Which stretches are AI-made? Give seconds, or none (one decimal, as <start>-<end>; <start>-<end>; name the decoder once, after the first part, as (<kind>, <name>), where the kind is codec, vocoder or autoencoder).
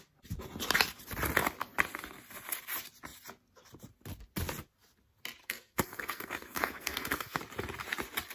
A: 5.4-7.4 (codec, SNAC)